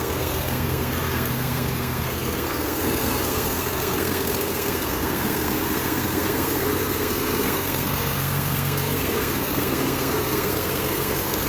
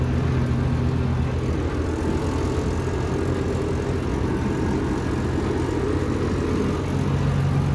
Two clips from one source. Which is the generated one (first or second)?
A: first